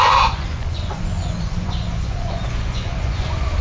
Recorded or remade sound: remade